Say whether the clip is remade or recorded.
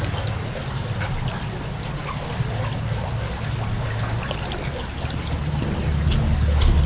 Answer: recorded